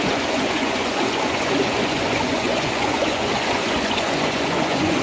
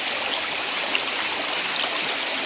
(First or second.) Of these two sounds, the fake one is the first